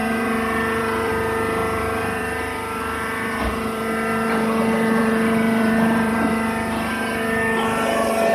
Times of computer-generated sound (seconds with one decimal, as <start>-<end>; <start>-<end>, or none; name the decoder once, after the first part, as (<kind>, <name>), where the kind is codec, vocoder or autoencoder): 0.0-1.1 (vocoder, BigVGAN v2); 1.6-6.3